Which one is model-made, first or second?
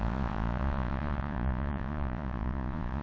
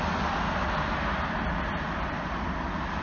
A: first